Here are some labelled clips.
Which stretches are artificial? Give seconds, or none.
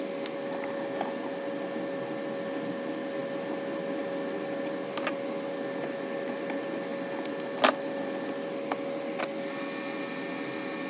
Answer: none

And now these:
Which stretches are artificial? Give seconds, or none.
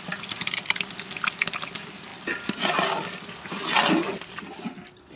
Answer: none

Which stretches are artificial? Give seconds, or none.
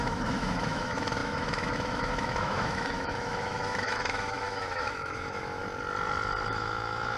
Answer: 0.0-5.6 (autoencoder, DAC-VAE); 6.5-7.2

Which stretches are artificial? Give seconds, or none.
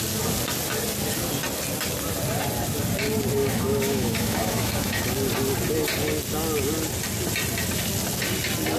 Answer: 3.4-5.1 (autoencoder, DAC-VAE)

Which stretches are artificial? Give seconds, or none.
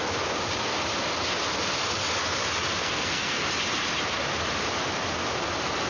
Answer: 2.8-3.4 (codec, SNAC)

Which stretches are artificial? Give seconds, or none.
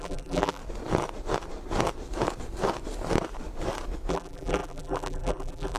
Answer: 0.0-0.6 (vocoder, BigVGAN v2); 4.1-5.8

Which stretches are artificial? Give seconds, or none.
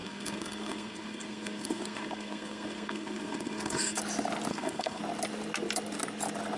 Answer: 0.0-4.0 (codec, SNAC); 4.5-5.0